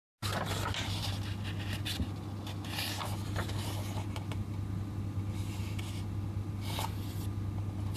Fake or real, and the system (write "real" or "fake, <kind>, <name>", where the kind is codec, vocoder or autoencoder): real